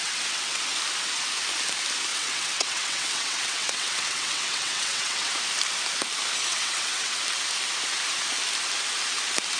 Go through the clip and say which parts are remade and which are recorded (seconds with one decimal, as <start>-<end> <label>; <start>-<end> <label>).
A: 0.0-0.6 remade; 0.6-2.1 recorded; 2.1-5.4 remade; 5.4-6.5 recorded; 6.5-7.2 remade; 7.2-9.6 recorded